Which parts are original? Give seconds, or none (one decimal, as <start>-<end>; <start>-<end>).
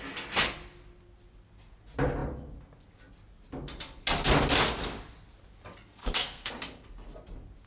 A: 0.0-6.0; 6.5-7.7